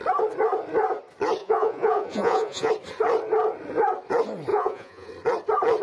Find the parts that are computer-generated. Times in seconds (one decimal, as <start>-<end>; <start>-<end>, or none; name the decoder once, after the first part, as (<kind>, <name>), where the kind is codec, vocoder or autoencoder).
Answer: 1.4-2.7 (vocoder, Vocos); 4.5-5.1